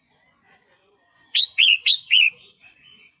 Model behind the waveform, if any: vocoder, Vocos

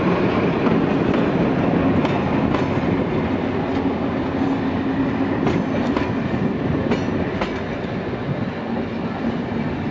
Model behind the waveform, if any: none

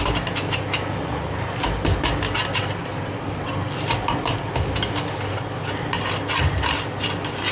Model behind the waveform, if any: none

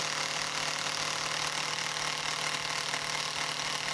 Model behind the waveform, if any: none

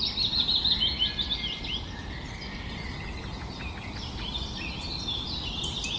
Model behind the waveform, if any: none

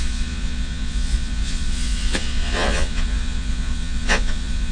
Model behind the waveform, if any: vocoder, Vocos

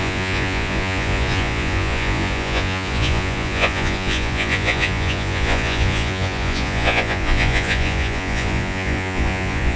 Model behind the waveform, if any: vocoder, Vocos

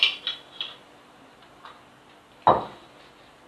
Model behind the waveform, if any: none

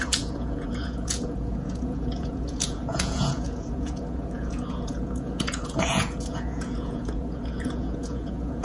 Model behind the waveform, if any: vocoder, Vocos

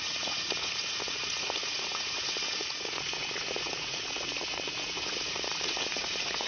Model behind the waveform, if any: vocoder, Vocos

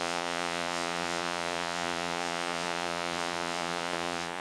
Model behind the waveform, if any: vocoder, Vocos